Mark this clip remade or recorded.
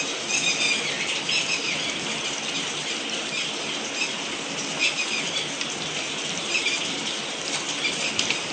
recorded